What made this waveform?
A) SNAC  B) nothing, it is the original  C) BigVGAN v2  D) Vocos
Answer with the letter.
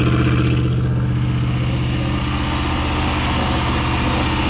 B